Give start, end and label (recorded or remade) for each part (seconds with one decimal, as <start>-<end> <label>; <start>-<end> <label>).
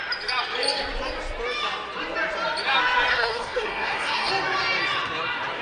0.0-3.1 recorded; 3.1-4.3 remade; 4.3-5.6 recorded